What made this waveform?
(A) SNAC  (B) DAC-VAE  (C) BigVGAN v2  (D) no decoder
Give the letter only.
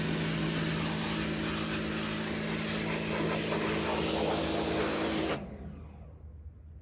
D